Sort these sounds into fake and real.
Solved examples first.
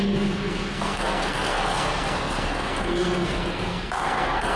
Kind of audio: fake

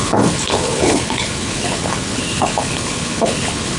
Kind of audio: fake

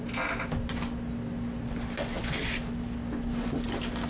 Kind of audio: real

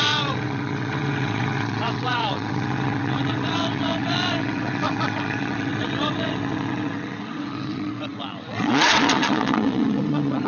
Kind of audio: fake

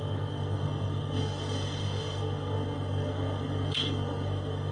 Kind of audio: fake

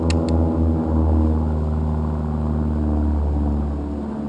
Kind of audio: real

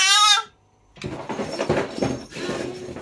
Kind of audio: real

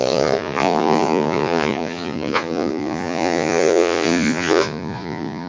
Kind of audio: fake